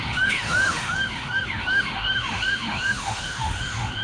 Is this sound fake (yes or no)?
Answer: yes